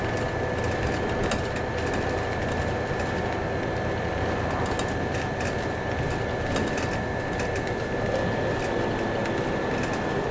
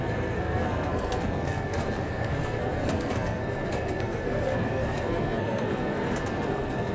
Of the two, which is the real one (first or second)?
first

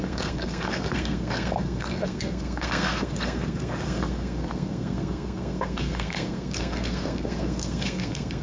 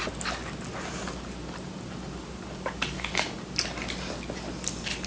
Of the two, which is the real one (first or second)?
second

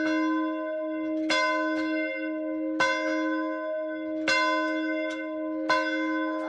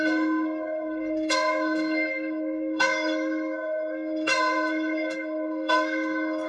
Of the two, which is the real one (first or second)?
first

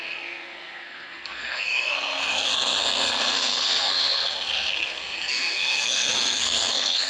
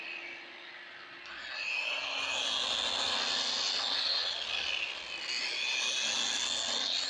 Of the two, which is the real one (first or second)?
second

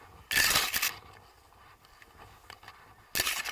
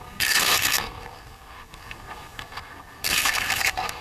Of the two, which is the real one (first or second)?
first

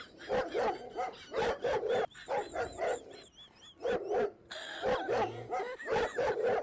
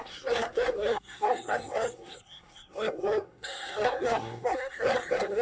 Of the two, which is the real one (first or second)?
first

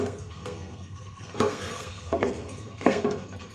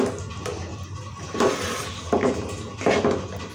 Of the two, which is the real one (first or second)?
second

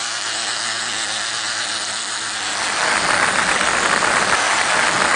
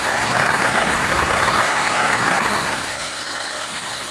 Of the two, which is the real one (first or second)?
first